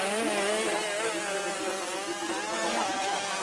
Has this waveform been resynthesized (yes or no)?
no